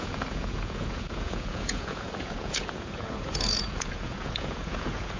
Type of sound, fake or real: fake